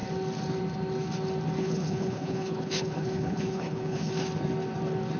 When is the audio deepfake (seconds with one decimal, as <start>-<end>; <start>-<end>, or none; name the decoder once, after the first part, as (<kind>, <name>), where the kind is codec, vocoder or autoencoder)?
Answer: 1.6-4.1 (codec, HILCodec)